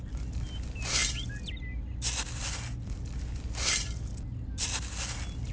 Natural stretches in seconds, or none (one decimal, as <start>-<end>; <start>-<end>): 0.0-5.5